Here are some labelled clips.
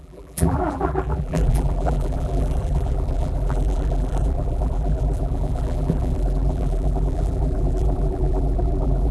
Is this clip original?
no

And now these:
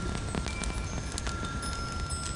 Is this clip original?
yes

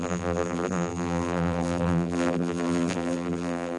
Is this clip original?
no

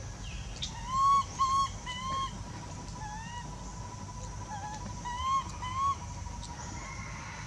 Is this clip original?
yes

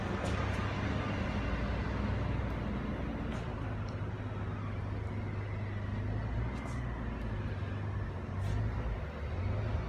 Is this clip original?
yes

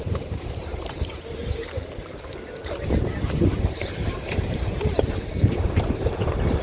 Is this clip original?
no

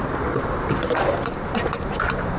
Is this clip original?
no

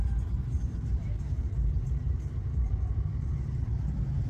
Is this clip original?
no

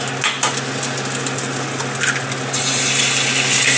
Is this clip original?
yes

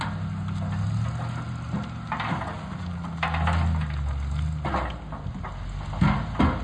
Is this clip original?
yes